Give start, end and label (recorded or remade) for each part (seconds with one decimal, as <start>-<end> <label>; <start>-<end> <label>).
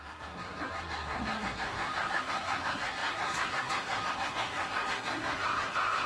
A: 0.0-6.1 remade